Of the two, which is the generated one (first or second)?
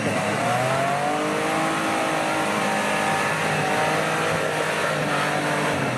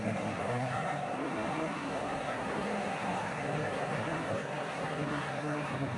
second